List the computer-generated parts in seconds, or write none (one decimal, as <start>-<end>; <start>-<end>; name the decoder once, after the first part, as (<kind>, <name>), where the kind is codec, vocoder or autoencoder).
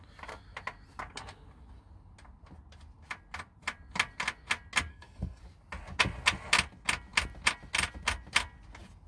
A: 4.9-5.4 (codec, SNAC)